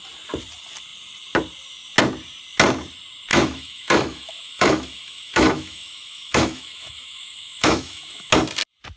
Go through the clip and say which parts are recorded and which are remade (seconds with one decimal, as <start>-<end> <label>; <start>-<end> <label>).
0.0-3.3 recorded; 3.3-8.3 remade; 8.3-9.0 recorded